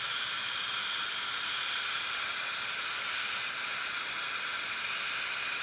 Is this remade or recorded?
recorded